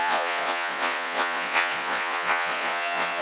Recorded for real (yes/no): no